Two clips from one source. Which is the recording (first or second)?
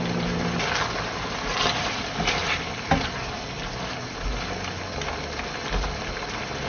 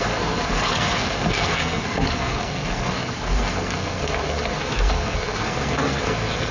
first